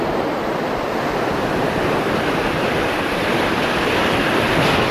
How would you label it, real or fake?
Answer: real